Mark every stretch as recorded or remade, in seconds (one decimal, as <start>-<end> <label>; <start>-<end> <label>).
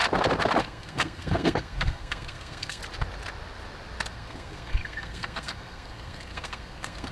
0.0-0.6 recorded; 0.6-2.8 remade; 2.8-4.1 recorded; 4.1-7.1 remade